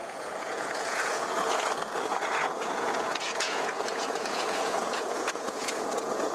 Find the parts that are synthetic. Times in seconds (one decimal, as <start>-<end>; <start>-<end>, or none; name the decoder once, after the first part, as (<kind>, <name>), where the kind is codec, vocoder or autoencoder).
0.0-1.7 (vocoder, Vocos); 2.1-6.3